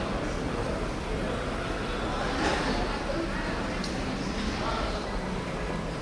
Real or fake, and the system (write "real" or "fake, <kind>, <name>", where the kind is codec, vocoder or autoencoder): real